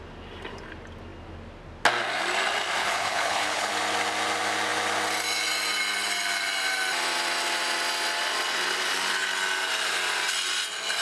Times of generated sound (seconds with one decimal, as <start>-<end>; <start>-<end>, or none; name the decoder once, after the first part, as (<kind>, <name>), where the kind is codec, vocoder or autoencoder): 2.8-3.7 (codec, HILCodec)